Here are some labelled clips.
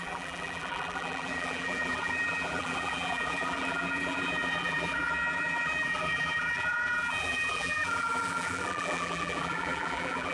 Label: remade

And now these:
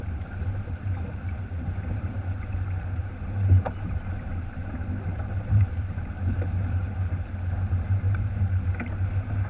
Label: remade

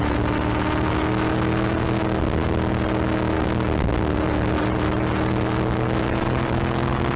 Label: recorded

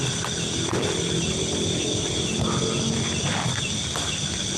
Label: recorded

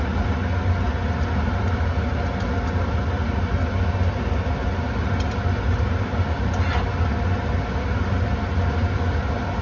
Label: recorded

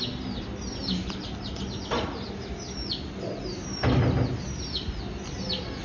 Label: recorded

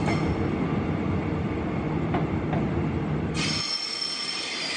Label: recorded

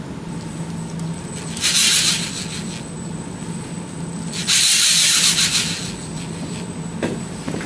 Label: recorded